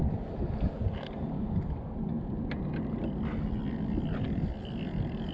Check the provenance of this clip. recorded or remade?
recorded